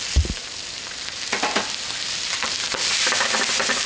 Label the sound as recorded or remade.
recorded